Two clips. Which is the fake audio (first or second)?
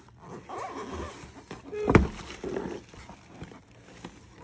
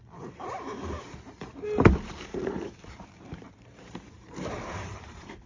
second